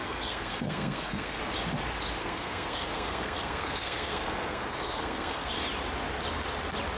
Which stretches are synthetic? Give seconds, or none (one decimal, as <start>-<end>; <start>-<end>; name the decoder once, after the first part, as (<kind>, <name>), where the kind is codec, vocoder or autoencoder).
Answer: 0.0-1.4 (codec, SNAC); 2.2-5.5